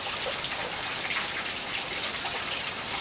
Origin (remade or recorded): recorded